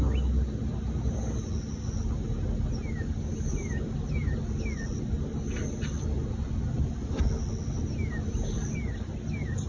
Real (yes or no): yes